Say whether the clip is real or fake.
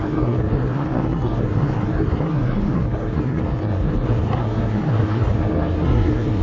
fake